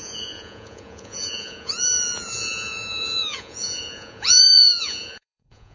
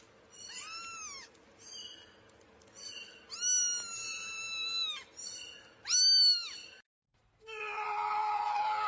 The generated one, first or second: first